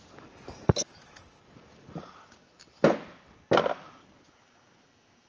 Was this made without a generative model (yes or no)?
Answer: yes